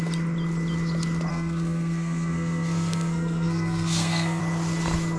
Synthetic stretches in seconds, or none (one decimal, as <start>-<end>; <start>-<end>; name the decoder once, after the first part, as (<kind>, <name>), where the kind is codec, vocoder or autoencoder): 1.3-4.4 (codec, SNAC)